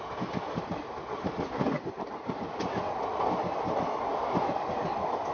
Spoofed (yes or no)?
no